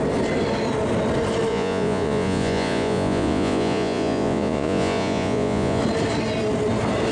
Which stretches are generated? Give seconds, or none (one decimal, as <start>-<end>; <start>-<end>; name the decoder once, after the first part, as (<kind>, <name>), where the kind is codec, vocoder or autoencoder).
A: 1.5-5.8 (vocoder, Vocos)